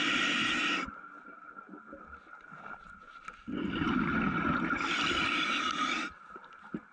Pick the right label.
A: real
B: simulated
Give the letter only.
B